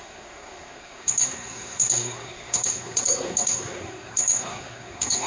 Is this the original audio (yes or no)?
no